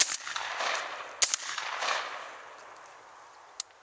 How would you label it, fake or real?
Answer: real